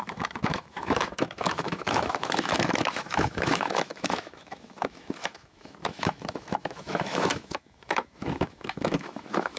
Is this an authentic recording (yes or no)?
no